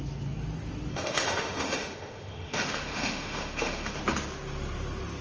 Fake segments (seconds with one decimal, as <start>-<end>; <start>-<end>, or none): 0.9-4.0